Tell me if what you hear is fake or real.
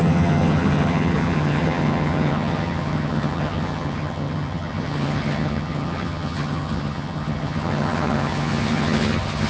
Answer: fake